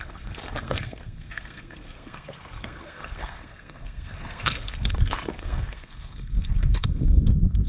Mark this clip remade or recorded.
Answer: remade